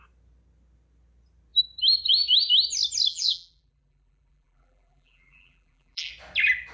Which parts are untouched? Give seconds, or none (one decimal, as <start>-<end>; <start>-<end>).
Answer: 0.0-3.1; 6.1-6.7